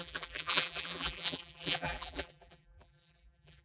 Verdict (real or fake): fake